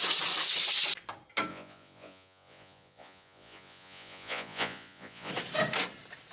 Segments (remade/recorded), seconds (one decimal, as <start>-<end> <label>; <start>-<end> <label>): 0.0-1.5 recorded; 1.5-5.3 remade; 5.3-6.3 recorded